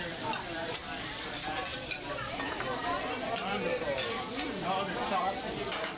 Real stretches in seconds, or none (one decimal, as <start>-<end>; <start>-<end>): none